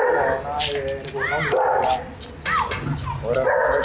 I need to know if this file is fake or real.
real